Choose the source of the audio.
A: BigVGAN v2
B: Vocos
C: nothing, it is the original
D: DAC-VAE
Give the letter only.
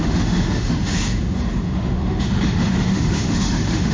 D